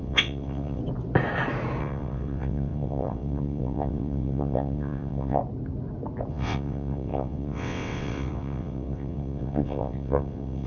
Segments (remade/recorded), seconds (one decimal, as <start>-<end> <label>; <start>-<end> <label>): 0.0-0.8 remade; 0.8-1.8 recorded; 1.8-5.4 remade; 5.4-6.3 recorded; 6.3-10.7 remade